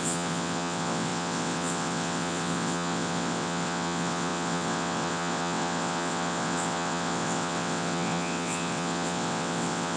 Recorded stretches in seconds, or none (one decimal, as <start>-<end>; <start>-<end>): none